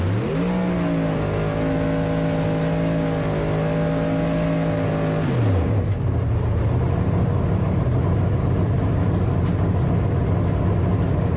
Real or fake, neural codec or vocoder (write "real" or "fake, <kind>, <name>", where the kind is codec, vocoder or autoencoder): real